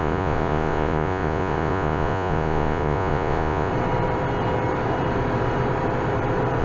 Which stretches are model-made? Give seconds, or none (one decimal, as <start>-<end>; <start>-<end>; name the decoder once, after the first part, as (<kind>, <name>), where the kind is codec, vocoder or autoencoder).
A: 0.0-3.7 (vocoder, Vocos)